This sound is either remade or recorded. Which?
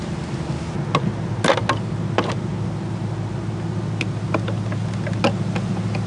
recorded